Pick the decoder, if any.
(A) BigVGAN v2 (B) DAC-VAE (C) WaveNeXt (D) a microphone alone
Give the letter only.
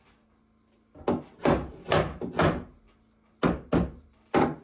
D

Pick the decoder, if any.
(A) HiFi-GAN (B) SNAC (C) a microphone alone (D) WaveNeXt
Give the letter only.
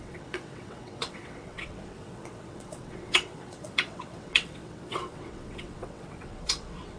D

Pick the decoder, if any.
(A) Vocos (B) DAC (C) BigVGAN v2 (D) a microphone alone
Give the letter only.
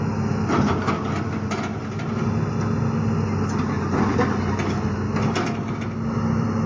D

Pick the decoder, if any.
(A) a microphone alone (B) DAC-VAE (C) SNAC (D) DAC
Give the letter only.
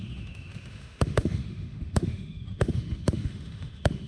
B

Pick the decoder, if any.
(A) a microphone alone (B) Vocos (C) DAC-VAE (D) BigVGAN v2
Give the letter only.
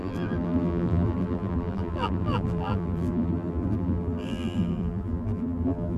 D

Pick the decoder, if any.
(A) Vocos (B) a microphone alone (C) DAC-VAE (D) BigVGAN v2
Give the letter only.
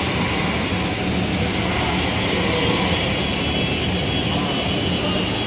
B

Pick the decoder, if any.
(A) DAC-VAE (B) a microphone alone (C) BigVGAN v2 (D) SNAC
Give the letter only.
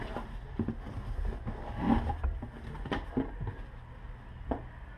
B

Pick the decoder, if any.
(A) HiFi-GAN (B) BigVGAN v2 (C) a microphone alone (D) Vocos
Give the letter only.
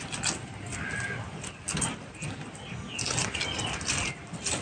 C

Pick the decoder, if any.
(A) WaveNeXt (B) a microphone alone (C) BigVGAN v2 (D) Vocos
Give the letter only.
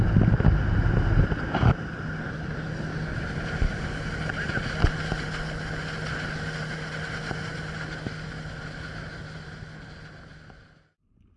B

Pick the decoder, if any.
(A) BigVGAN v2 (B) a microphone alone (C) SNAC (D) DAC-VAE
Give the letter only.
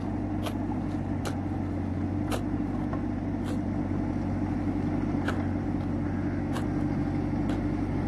B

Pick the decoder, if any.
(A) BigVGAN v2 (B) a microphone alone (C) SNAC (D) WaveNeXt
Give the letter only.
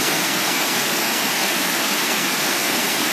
C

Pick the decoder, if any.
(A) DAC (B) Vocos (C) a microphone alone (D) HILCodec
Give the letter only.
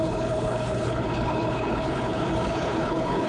D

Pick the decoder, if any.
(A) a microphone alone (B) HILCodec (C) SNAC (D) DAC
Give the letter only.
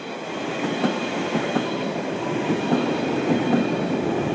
A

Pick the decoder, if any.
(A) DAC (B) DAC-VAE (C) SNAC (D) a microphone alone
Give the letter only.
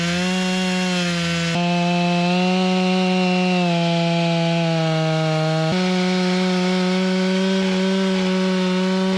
D